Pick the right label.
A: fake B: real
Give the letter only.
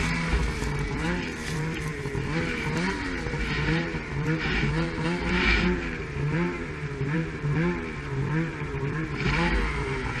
A